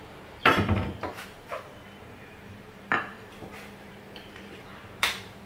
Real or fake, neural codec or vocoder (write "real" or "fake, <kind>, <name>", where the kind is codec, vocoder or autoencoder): fake, vocoder, BigVGAN v2